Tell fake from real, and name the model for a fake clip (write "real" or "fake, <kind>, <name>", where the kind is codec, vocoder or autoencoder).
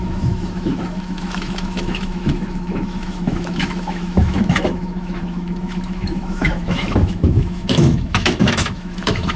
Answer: fake, autoencoder, DAC-VAE